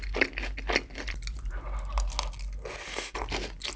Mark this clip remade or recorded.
recorded